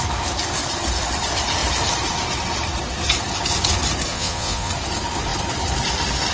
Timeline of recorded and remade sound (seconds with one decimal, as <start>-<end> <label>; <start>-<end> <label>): 0.0-4.1 recorded; 4.1-4.7 remade; 4.7-6.3 recorded